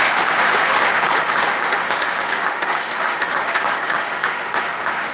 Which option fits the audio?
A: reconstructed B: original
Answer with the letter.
A